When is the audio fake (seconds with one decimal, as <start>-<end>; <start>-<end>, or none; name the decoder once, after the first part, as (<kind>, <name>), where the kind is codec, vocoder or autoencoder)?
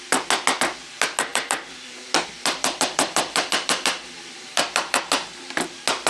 1.3-5.0 (vocoder, BigVGAN v2)